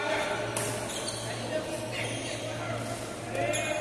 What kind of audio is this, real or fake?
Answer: real